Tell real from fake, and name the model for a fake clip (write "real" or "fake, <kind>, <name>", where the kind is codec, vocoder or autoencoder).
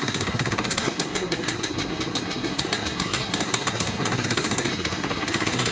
fake, codec, SNAC